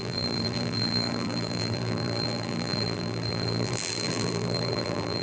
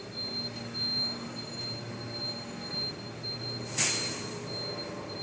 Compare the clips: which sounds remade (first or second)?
first